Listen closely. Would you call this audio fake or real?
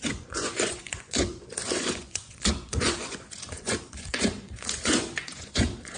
fake